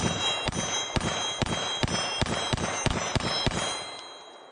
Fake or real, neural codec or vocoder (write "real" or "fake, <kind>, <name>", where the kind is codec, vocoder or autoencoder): fake, vocoder, BigVGAN v2